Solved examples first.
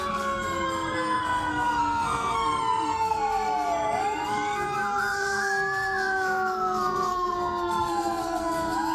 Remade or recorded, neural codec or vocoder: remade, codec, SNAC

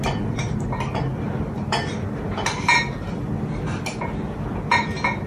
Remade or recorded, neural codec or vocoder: recorded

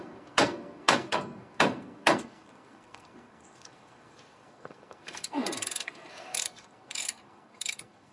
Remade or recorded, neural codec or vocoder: remade, codec, SNAC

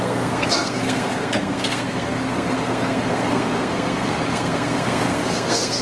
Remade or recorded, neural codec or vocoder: remade, codec, SNAC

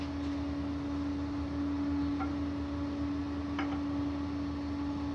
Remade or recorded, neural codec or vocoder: recorded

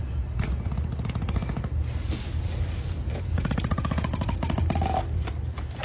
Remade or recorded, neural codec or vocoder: recorded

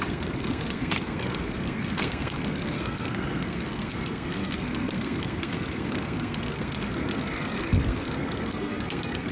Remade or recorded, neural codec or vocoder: remade, codec, SNAC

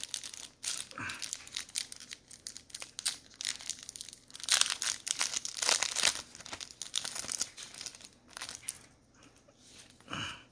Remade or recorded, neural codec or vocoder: recorded